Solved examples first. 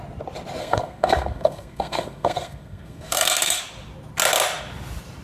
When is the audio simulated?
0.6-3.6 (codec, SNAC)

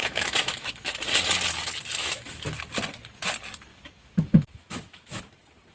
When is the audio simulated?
0.0-1.0 (autoencoder, DAC-VAE); 2.0-2.6; 3.7-5.2

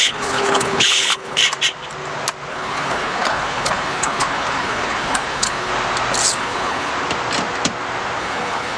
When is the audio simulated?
0.0-1.4 (codec, HILCodec); 2.5-5.7; 6.3-6.9; 8.2-8.8

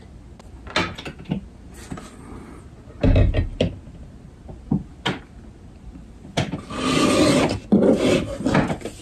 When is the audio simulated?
none

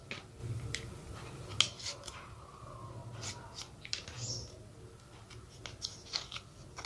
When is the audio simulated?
0.4-1.6 (vocoder, BigVGAN v2); 3.0-4.1

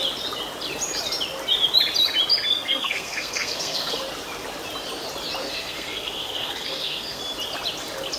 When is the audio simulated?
2.5-4.0 (codec, SNAC); 5.4-7.2

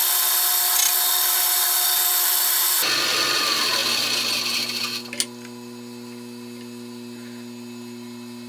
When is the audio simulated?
none